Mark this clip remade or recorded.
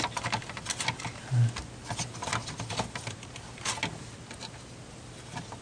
recorded